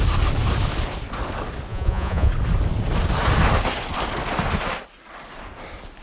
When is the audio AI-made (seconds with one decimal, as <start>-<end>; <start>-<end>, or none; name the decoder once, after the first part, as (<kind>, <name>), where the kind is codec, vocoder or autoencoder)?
1.7-2.3 (vocoder, Vocos)